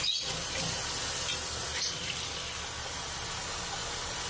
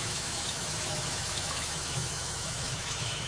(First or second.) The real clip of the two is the first